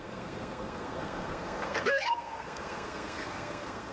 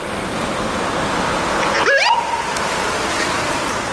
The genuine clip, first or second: second